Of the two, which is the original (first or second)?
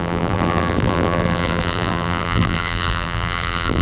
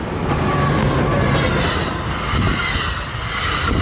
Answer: second